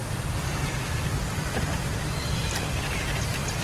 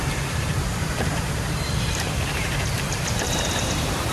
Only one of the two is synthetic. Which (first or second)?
second